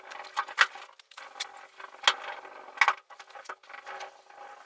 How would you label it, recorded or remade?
recorded